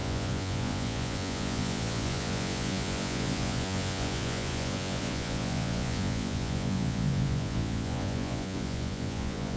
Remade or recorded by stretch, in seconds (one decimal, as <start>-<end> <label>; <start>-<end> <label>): 0.0-9.6 remade